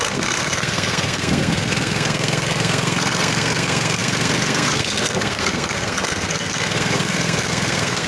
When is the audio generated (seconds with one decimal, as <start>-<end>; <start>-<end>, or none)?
0.0-8.1